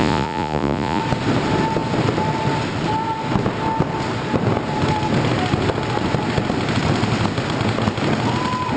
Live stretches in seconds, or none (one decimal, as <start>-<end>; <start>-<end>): 1.0-8.8